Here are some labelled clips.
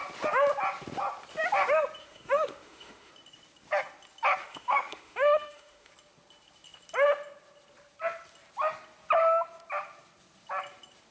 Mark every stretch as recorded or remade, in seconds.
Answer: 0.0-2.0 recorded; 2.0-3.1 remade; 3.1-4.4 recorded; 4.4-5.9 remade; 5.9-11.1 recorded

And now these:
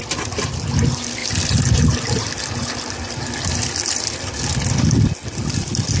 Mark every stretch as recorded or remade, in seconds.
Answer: 0.0-6.0 recorded

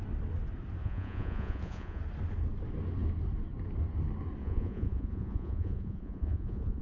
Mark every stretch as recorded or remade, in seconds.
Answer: 0.0-0.8 recorded; 0.8-2.0 remade; 2.0-4.4 recorded; 4.4-6.8 remade

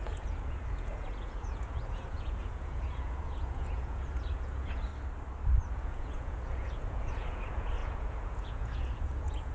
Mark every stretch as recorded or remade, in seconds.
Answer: 0.0-4.9 remade; 4.9-5.7 recorded; 5.7-9.5 remade

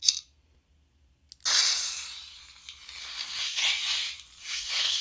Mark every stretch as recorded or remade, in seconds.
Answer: 0.0-3.0 recorded; 3.0-3.6 remade; 3.6-4.4 recorded; 4.4-5.0 remade

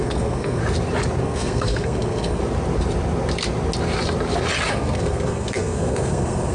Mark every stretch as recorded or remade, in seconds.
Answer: 0.0-0.6 remade; 0.6-1.2 recorded; 1.2-2.4 remade; 2.4-4.7 recorded; 4.7-6.5 remade